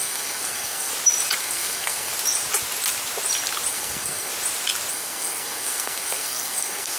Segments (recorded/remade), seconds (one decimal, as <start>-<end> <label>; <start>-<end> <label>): 0.0-0.9 remade; 0.9-1.4 recorded; 1.4-2.1 remade; 2.1-3.7 recorded; 3.7-4.3 remade; 4.3-4.9 recorded; 4.9-7.0 remade